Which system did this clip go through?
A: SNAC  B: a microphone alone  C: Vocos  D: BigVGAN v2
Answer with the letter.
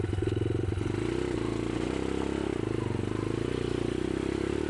B